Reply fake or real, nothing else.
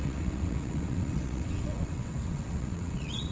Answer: fake